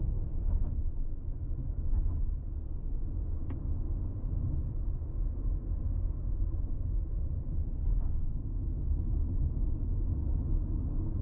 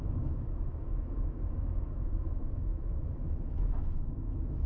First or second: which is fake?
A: second